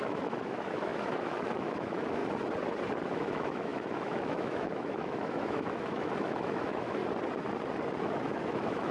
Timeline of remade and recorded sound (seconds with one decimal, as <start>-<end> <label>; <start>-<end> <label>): 0.0-2.2 remade; 2.2-3.0 recorded; 3.0-7.0 remade; 7.0-8.0 recorded; 8.0-8.9 remade